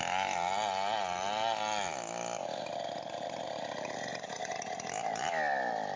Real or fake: real